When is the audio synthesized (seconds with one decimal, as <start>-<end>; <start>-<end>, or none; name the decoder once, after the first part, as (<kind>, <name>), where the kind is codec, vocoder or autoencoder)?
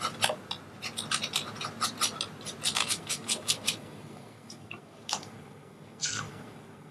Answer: 2.8-6.9 (codec, SNAC)